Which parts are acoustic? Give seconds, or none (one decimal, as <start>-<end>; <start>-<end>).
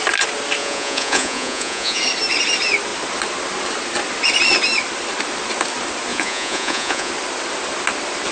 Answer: 0.0-0.6; 2.0-6.1; 7.1-8.3